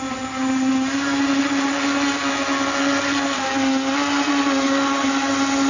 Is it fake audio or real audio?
real